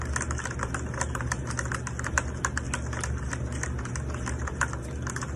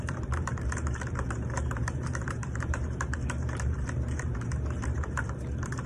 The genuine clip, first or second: first